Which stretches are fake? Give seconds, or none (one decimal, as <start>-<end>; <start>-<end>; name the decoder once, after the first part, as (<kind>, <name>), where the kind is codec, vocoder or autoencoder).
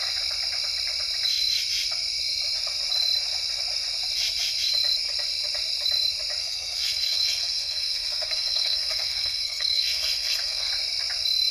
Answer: 6.4-10.7 (codec, SNAC)